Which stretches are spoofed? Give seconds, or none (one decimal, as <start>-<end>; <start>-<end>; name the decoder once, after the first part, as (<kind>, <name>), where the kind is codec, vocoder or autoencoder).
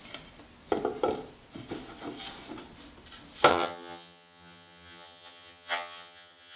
3.5-6.6 (vocoder, HiFi-GAN)